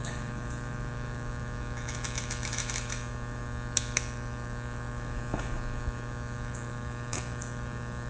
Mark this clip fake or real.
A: fake